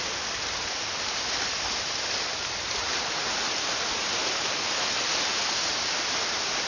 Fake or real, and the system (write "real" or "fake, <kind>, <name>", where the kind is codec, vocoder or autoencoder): real